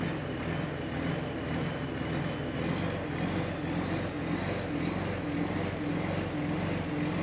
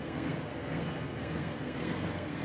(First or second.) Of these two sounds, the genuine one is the first